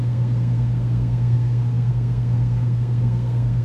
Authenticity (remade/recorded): remade